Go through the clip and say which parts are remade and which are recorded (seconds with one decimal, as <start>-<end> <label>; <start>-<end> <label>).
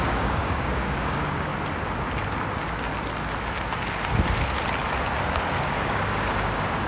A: 0.0-1.5 remade; 1.5-5.6 recorded; 5.6-6.9 remade